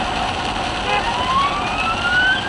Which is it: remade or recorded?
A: remade